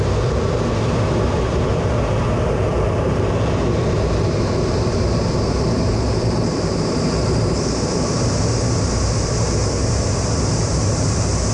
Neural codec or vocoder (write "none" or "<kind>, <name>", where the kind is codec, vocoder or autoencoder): vocoder, BigVGAN v2